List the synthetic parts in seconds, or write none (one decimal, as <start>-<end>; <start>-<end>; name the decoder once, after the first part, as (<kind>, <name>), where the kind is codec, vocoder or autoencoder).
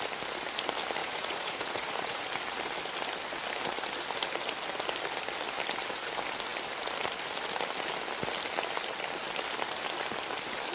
1.0-2.2 (vocoder, Vocos)